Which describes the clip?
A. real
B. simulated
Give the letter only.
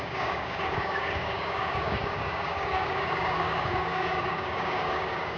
B